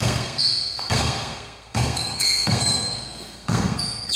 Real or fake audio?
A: fake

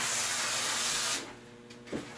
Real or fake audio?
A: real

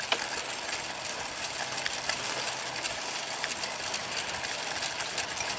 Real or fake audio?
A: real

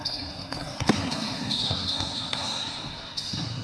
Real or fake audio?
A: fake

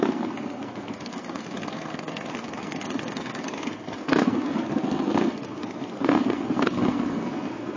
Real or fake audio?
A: fake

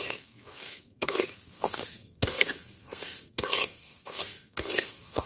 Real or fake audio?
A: fake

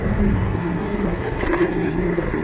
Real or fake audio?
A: fake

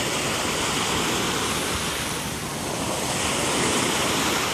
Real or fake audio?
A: real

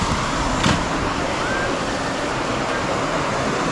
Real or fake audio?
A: real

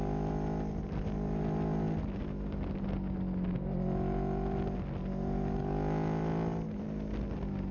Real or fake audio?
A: real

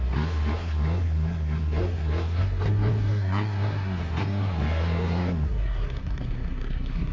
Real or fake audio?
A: fake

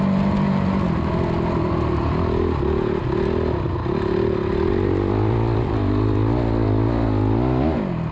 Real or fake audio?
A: real